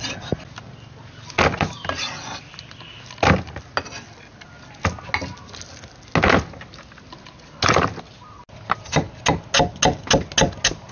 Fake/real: real